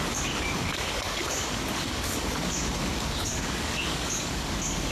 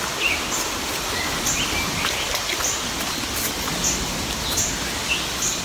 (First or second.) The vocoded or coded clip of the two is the first